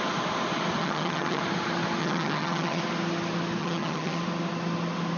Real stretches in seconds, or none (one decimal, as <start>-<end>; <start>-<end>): 0.0-0.8; 1.4-2.0; 2.8-3.6; 4.2-5.2